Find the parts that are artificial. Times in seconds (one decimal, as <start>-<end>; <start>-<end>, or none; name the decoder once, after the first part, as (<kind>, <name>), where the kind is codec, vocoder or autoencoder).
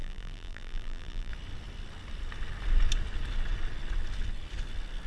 0.0-1.3 (vocoder, BigVGAN v2)